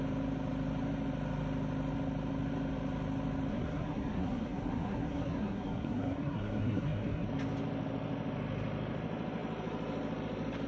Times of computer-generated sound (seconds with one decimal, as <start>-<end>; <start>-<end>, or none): 3.5-7.3

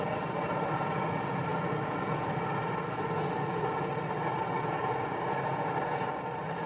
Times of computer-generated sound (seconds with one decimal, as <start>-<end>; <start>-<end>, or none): none

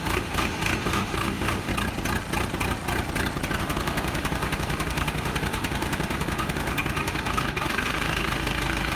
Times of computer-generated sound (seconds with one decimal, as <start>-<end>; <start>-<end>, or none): 0.0-1.7; 3.6-9.0

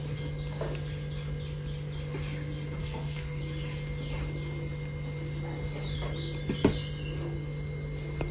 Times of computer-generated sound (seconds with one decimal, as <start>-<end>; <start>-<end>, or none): 2.8-3.4

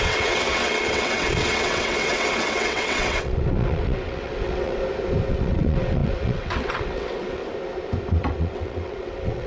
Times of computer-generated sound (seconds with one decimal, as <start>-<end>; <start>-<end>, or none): 0.0-4.8; 5.3-7.4; 8.1-9.5

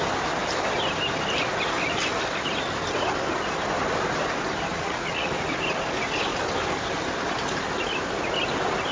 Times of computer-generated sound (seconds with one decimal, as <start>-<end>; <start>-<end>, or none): 4.7-5.3

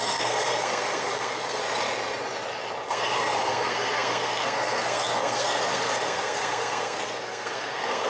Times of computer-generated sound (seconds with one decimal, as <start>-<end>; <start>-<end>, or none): 0.0-1.6; 2.9-8.1

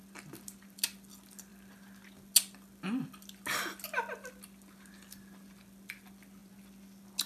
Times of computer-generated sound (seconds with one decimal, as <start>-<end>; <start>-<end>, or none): none